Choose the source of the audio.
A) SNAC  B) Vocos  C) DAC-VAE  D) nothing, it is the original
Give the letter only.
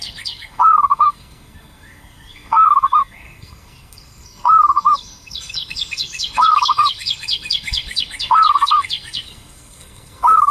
A